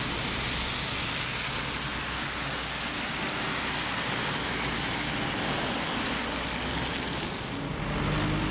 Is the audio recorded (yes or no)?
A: yes